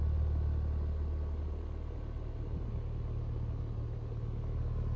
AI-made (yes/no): no